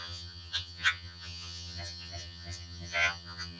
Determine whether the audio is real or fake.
fake